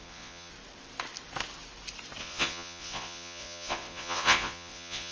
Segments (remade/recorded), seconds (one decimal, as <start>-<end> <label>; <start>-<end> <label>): 0.0-0.5 remade; 0.5-2.2 recorded; 2.2-5.1 remade